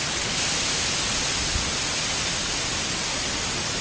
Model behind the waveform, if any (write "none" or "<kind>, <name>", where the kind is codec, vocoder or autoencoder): none